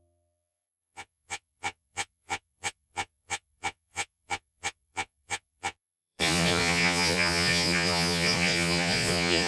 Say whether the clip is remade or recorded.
remade